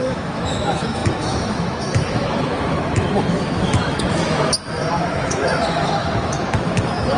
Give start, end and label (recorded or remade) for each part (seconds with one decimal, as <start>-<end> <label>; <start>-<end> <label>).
0.0-7.2 remade